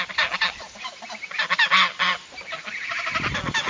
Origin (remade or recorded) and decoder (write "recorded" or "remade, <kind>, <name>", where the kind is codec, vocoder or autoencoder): recorded